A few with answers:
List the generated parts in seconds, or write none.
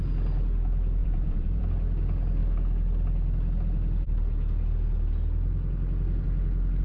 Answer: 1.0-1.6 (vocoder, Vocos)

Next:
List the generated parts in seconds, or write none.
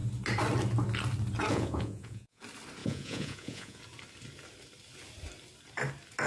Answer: 1.5-2.4 (vocoder, Vocos); 2.8-3.8